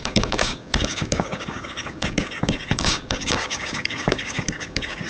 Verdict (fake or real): fake